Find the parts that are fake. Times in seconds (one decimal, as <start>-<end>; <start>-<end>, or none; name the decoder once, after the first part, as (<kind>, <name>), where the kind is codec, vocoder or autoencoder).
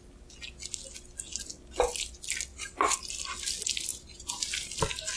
2.5-3.1 (vocoder, BigVGAN v2); 3.9-4.7